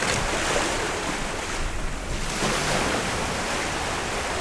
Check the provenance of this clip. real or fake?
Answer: real